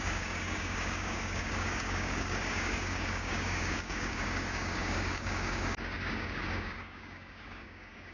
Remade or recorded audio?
remade